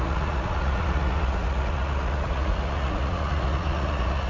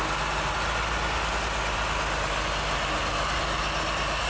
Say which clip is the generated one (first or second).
first